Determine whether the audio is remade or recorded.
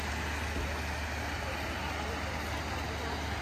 recorded